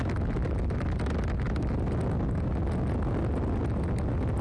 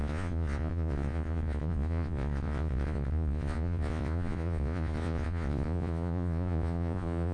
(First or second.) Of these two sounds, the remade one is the second